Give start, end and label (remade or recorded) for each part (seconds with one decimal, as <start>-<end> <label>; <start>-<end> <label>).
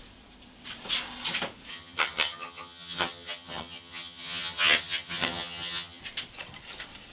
0.0-1.7 recorded; 1.7-6.0 remade; 6.0-7.1 recorded